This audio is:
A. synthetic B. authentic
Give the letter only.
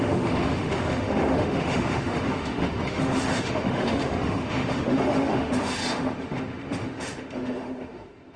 A